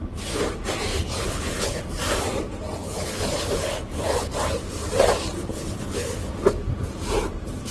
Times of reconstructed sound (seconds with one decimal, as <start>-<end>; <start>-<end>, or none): 0.9-1.8; 2.8-4.3; 5.4-6.3